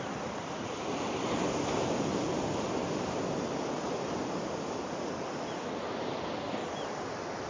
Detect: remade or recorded remade